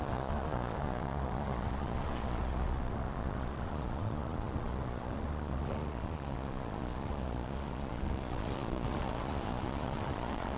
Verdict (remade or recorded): remade